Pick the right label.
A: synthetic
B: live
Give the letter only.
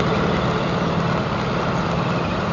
B